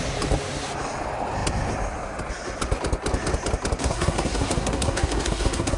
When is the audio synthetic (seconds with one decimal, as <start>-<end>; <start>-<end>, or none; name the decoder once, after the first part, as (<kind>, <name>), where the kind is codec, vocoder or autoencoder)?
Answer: 3.8-5.8 (codec, SNAC)